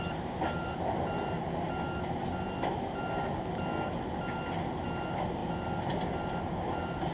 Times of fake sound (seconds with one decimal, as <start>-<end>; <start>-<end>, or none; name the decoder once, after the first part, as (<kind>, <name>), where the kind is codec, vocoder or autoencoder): none

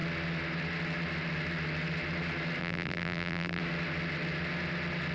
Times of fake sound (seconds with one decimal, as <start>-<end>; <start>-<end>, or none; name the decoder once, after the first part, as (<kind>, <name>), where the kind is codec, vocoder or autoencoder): 2.6-3.6 (vocoder, BigVGAN v2)

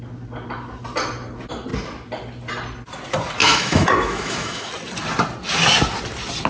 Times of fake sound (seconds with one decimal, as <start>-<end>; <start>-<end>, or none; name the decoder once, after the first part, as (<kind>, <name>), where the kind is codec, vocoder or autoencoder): 3.4-4.7 (autoencoder, DAC-VAE)

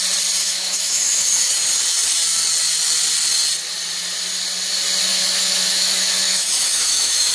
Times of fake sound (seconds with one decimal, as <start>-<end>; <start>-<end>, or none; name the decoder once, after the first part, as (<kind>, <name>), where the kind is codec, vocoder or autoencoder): 0.4-1.5 (autoencoder, DAC-VAE); 5.1-7.3